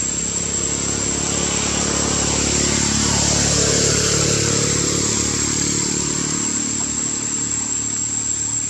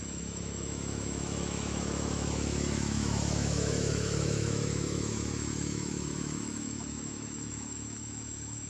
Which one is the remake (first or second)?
second